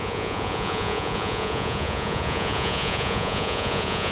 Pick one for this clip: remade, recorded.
remade